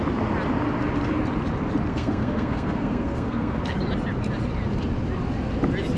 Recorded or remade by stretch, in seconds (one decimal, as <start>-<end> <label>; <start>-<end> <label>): 0.0-1.9 recorded; 1.9-3.6 remade; 3.6-6.0 recorded